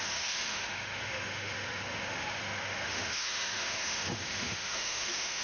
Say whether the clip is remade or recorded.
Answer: remade